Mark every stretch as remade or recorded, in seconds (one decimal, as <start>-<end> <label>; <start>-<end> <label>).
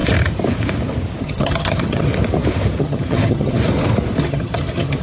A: 0.0-1.2 recorded; 1.2-2.1 remade; 2.1-2.8 recorded; 2.8-3.6 remade; 3.6-4.2 recorded; 4.2-5.0 remade